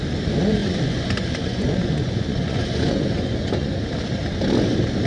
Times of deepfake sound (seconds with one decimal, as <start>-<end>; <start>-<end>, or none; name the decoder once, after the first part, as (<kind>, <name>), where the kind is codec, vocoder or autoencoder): 0.6-3.7 (vocoder, Vocos)